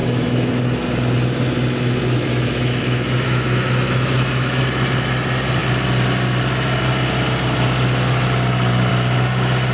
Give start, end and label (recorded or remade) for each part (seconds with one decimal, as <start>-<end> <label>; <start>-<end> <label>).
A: 0.0-0.5 remade; 0.5-2.3 recorded; 2.3-4.6 remade; 4.6-9.7 recorded